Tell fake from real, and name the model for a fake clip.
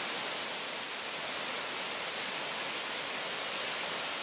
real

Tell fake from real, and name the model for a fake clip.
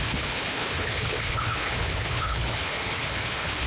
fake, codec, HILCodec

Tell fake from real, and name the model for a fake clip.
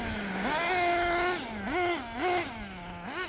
real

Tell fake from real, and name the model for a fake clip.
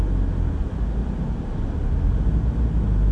real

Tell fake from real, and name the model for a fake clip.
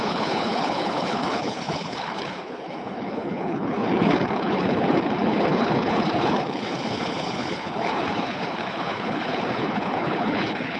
fake, codec, HILCodec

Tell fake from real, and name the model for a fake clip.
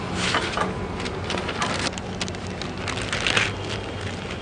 real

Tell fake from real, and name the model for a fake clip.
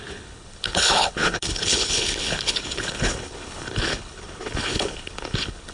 fake, codec, HILCodec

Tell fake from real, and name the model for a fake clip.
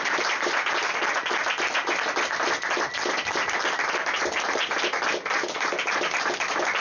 real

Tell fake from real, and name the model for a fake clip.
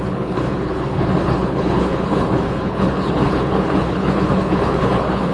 fake, codec, HILCodec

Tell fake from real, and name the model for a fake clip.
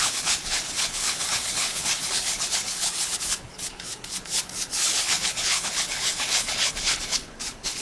fake, codec, HILCodec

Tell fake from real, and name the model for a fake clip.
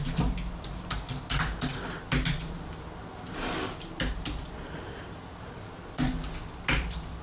real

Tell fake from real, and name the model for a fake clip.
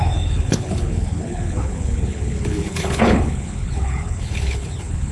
fake, codec, HILCodec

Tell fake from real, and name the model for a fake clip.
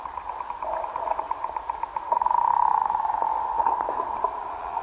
real